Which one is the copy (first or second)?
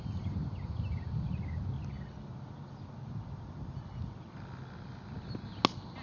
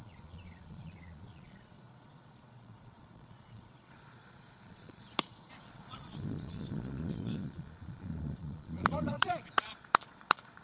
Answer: second